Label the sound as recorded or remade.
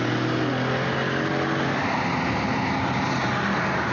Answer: recorded